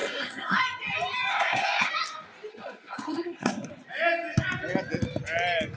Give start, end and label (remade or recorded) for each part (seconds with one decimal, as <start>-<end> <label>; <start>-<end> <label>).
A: 0.0-0.6 remade; 0.6-1.3 recorded; 1.3-1.9 remade; 1.9-2.5 recorded; 2.5-3.7 remade; 3.7-5.8 recorded